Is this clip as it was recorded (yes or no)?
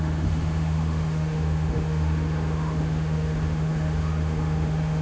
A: no